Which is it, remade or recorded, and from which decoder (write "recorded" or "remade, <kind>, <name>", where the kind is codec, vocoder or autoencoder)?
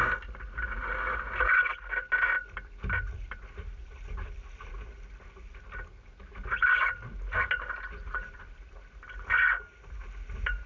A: recorded